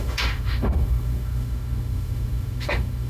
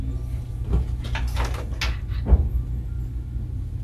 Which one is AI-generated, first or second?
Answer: first